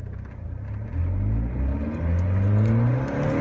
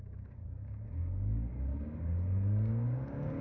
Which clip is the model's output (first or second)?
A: second